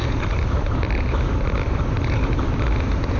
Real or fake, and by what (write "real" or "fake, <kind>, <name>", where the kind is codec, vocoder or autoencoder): real